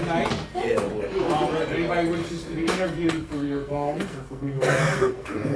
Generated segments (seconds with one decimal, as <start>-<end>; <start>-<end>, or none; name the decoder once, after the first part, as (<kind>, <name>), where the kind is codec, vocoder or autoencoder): 2.2-5.6 (codec, SNAC)